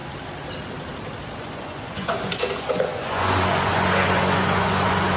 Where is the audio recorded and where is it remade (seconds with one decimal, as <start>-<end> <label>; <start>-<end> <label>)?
0.0-1.4 recorded; 1.4-5.2 remade